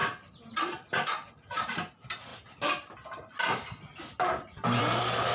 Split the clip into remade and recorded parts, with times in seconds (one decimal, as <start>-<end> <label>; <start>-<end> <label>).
0.0-5.3 recorded